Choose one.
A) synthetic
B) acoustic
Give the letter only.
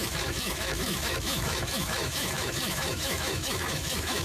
A